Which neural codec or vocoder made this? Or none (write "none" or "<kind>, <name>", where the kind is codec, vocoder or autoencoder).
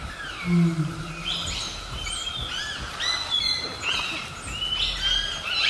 none